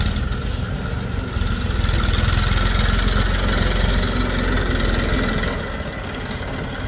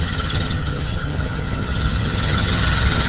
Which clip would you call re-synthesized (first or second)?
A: second